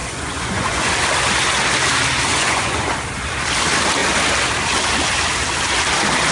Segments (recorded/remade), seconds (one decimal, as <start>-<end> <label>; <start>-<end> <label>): 0.0-0.9 remade; 0.9-2.3 recorded; 2.3-2.9 remade; 2.9-6.3 recorded